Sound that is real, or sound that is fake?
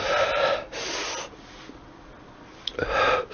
real